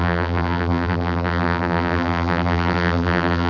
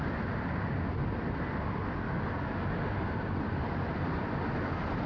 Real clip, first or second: second